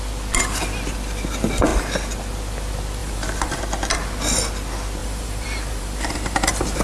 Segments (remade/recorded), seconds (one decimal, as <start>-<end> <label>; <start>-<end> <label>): 0.0-3.0 recorded; 3.0-3.6 remade; 3.6-5.0 recorded; 5.0-6.8 remade